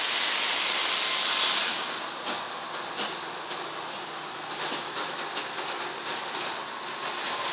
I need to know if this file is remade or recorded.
recorded